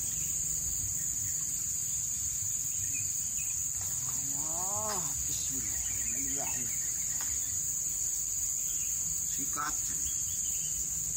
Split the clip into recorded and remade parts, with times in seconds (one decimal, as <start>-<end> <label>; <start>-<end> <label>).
0.0-1.8 recorded; 1.8-2.5 remade; 2.5-9.0 recorded; 9.0-9.7 remade; 9.7-11.2 recorded